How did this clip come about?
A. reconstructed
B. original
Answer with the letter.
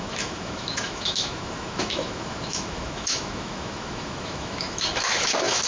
A